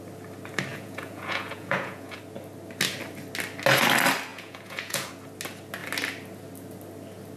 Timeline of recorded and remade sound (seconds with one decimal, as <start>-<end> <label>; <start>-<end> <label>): 0.0-0.7 recorded; 0.7-2.2 remade; 2.2-4.3 recorded; 4.3-5.1 remade; 5.1-7.4 recorded